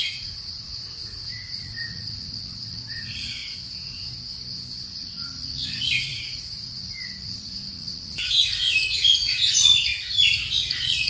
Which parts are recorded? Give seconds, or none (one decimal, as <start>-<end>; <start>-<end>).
3.4-4.9; 9.9-10.6